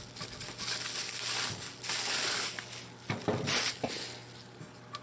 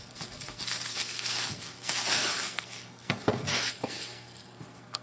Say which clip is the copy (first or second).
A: second